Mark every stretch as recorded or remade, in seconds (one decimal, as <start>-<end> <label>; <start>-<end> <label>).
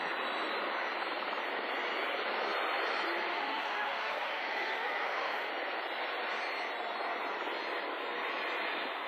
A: 0.0-3.3 recorded; 3.3-5.5 remade; 5.5-9.1 recorded